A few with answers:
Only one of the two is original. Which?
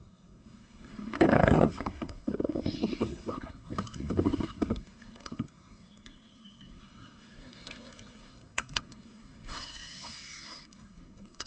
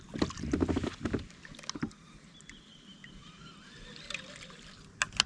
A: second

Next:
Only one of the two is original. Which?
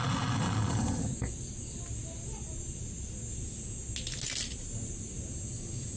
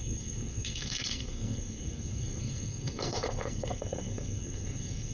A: first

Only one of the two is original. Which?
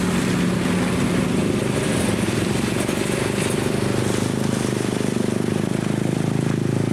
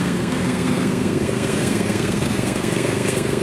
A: first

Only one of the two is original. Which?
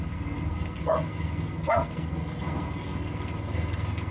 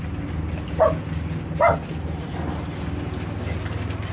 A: second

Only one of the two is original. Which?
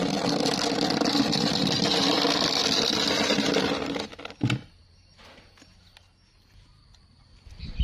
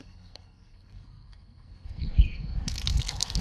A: first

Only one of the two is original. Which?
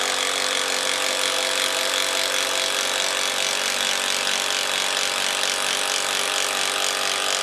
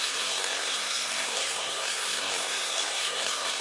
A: first